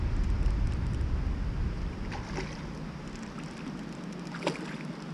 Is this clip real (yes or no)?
yes